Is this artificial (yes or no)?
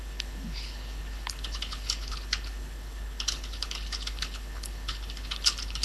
yes